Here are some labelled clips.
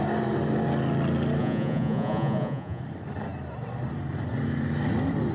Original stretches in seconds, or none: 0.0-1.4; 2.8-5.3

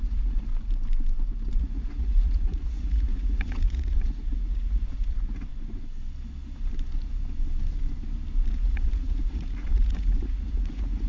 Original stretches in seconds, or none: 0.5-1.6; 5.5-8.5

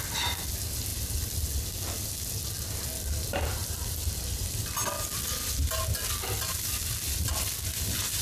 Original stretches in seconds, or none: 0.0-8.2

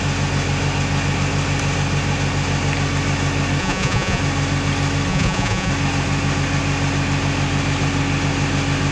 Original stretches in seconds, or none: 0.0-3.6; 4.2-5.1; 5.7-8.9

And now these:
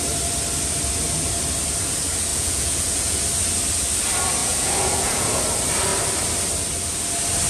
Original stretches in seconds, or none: 0.0-2.3; 3.2-4.4; 5.4-7.5

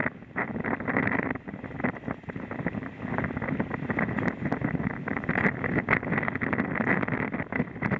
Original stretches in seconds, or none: 0.0-8.0

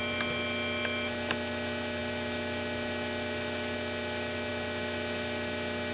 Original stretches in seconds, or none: 0.0-5.9

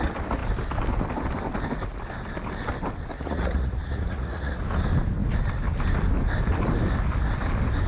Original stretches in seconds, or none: 0.0-3.1; 4.6-7.9